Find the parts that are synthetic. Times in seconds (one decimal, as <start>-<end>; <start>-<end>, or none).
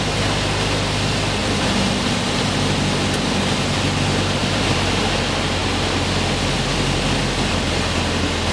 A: 1.4-2.4; 4.4-5.0